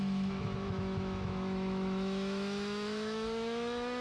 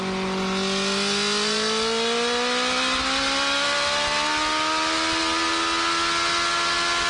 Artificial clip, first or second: first